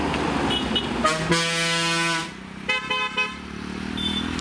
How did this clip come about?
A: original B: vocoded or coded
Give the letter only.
A